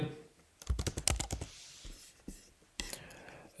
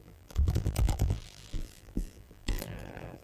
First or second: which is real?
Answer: first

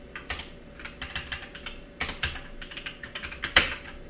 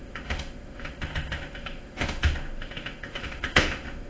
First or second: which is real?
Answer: first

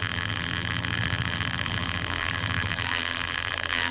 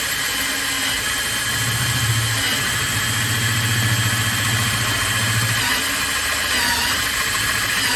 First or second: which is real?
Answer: second